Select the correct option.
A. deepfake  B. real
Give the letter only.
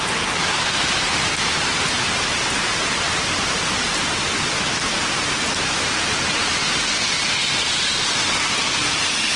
A